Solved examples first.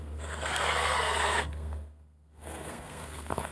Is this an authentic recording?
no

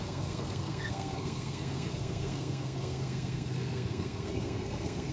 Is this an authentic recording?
no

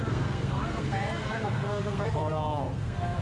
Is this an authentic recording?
no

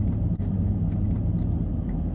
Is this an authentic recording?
yes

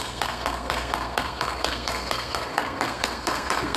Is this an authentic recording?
no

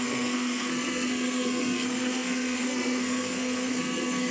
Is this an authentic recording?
no